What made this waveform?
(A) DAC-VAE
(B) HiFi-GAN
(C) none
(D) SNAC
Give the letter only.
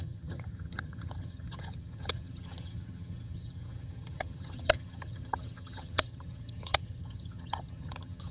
B